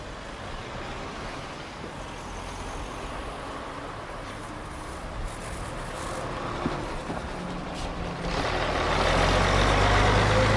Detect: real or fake real